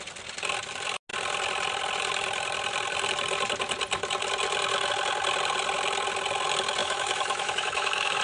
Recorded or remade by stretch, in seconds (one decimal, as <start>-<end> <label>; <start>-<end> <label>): 0.0-6.8 recorded; 6.8-8.2 remade